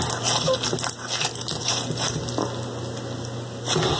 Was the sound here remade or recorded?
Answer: recorded